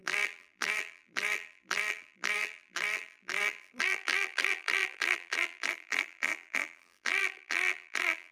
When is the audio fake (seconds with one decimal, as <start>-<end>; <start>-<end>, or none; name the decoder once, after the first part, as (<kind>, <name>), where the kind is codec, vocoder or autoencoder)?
0.0-8.3 (vocoder, BigVGAN v2)